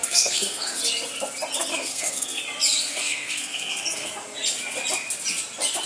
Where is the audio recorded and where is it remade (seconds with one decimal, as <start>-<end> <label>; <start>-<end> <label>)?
0.0-0.8 remade; 0.8-1.7 recorded; 1.7-2.4 remade; 2.4-2.9 recorded; 2.9-4.1 remade; 4.1-5.9 recorded